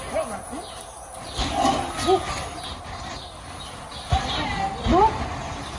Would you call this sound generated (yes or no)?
no